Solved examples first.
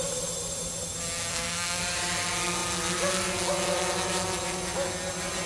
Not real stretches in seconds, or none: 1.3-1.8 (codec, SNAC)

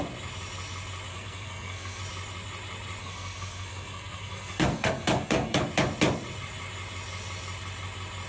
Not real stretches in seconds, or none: 1.1-2.0 (codec, SNAC); 3.0-5.6